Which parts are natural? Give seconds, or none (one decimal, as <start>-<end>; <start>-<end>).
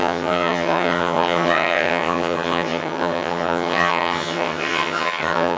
none